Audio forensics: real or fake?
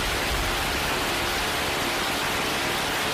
real